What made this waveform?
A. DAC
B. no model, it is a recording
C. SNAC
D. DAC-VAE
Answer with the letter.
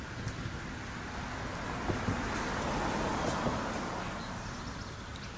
B